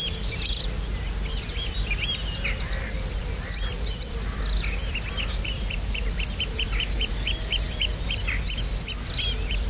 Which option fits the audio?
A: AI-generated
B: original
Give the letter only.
B